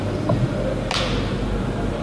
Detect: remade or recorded recorded